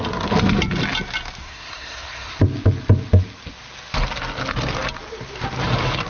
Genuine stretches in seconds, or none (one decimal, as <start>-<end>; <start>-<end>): 0.0-1.4; 2.4-6.1